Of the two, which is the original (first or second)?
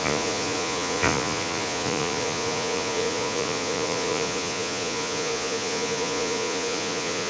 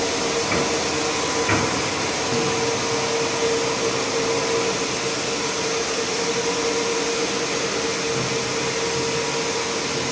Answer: second